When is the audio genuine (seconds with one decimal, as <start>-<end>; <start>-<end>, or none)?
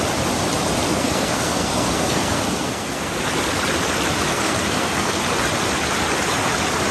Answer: 0.0-0.9; 3.3-4.3; 5.2-6.9